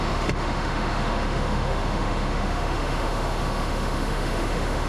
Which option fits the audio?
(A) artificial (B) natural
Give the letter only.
A